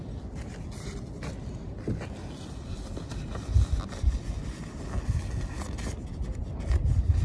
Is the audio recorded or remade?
recorded